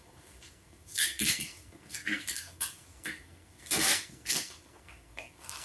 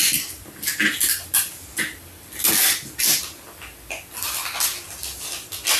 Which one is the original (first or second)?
second